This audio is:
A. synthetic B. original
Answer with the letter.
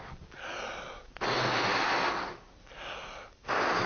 B